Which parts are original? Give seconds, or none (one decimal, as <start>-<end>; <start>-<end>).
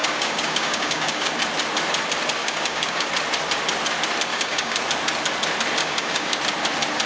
1.3-2.4; 3.1-4.3; 4.8-5.8; 6.4-7.1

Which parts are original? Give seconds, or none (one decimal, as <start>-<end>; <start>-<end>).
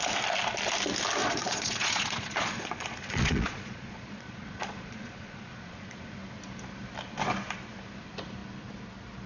0.0-1.2; 6.2-9.3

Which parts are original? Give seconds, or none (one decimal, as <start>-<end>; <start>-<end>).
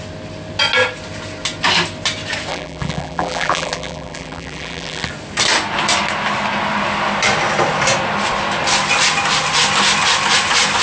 0.0-2.5; 5.1-10.8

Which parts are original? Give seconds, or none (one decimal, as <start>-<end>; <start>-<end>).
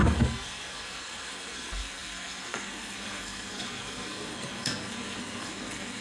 none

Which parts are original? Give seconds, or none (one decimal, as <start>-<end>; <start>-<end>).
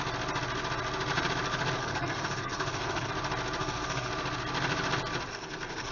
0.0-1.8; 3.1-3.6; 4.1-5.3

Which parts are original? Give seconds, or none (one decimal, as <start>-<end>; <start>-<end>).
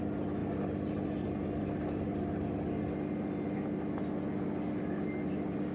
0.0-5.7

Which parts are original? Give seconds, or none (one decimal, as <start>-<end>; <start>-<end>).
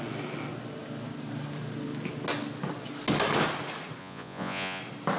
0.0-4.0; 4.8-5.2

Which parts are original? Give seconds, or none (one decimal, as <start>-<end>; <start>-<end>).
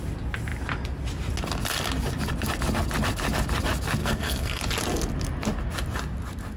0.0-4.0; 4.6-6.6